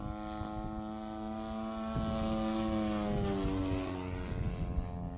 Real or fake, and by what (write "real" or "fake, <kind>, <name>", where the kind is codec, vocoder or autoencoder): real